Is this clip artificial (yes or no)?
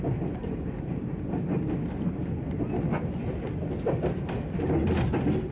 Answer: no